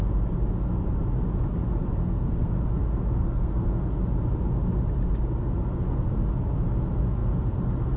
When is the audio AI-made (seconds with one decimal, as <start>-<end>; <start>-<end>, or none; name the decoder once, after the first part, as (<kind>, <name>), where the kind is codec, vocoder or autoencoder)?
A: 2.0-2.5 (codec, SNAC); 3.2-4.0